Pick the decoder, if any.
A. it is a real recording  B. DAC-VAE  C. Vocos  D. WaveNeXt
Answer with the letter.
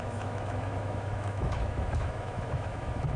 B